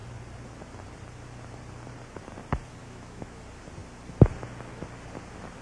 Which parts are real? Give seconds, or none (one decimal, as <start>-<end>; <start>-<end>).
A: 0.0-2.8; 3.4-5.6